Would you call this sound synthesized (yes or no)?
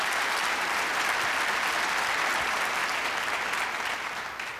no